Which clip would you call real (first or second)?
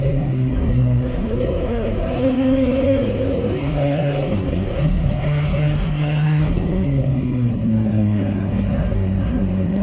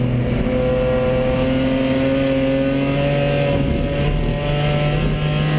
second